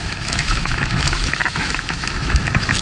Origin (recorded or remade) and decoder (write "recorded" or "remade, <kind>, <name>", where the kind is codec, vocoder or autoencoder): remade, autoencoder, DAC-VAE